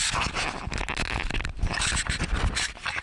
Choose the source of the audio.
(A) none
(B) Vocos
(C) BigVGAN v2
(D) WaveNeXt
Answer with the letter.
A